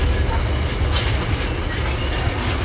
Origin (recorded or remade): recorded